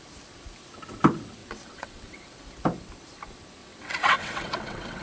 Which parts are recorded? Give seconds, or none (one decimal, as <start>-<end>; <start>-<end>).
0.0-1.4; 2.2-3.6